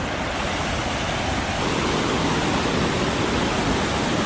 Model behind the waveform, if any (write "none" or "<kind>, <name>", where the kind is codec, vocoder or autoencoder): none